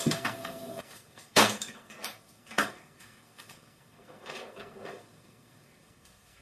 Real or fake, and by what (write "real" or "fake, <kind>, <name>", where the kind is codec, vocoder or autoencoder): fake, codec, SNAC